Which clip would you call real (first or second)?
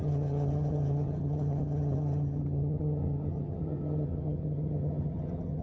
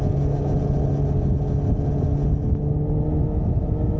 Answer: second